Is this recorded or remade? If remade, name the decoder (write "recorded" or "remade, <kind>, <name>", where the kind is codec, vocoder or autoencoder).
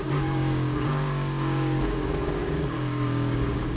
remade, codec, DAC